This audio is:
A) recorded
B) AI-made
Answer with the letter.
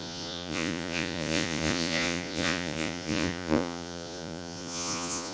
B